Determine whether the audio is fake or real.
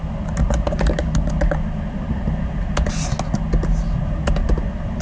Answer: real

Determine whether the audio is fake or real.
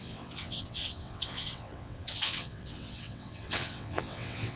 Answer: fake